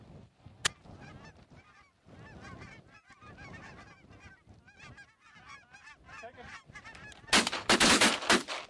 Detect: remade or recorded recorded